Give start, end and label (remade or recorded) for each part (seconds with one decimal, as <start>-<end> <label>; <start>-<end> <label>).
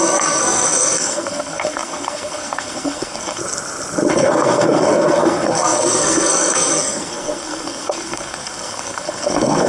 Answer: 0.0-3.4 remade; 3.4-4.1 recorded; 4.1-9.7 remade